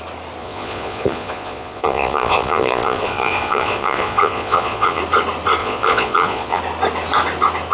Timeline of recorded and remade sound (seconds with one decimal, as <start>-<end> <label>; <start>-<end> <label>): 0.0-0.4 recorded; 0.4-5.0 remade; 5.0-5.6 recorded; 5.6-6.6 remade; 6.6-7.7 recorded